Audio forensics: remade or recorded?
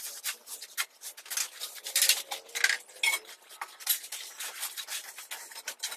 recorded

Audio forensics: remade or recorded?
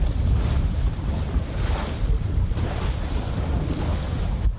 recorded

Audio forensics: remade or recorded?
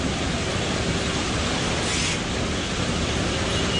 recorded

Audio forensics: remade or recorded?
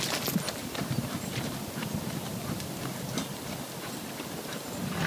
recorded